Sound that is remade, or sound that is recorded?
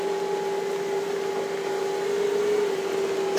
recorded